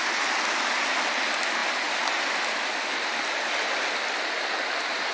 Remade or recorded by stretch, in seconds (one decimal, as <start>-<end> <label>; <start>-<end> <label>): 0.0-5.1 recorded